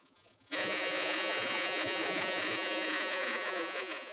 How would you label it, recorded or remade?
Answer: remade